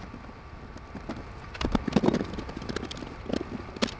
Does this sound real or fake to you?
real